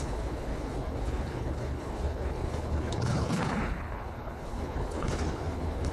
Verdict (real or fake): fake